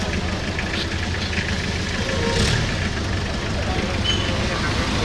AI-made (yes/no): no